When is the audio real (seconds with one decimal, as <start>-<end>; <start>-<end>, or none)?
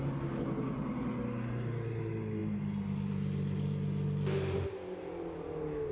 0.0-5.9